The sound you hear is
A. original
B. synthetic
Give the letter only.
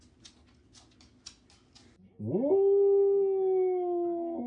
A